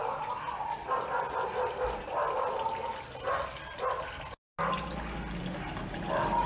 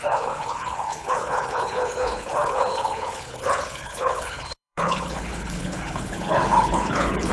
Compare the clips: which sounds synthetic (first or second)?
second